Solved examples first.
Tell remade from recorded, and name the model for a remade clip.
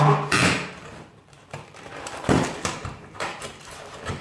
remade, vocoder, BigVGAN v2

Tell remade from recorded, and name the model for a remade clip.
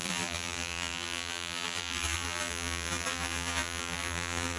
remade, vocoder, BigVGAN v2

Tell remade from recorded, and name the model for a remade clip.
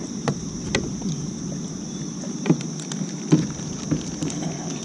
recorded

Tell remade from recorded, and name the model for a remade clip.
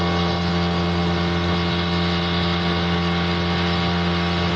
recorded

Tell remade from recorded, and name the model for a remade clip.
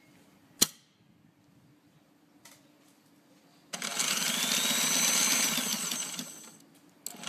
recorded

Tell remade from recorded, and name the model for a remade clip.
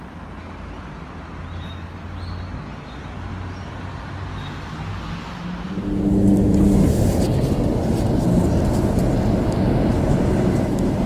recorded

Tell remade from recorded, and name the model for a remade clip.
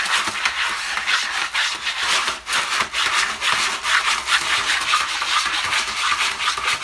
remade, vocoder, BigVGAN v2